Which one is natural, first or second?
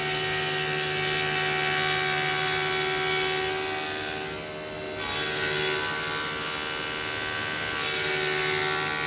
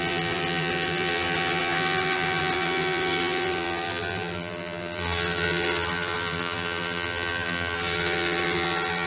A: first